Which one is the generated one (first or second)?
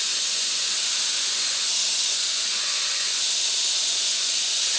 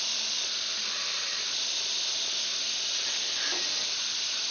first